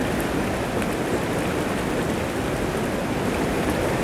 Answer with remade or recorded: recorded